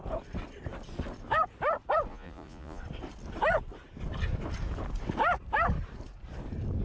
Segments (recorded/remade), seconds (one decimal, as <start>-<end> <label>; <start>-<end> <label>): 0.0-2.1 recorded; 2.1-2.8 remade; 2.8-6.8 recorded